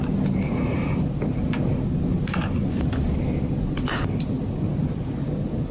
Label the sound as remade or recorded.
recorded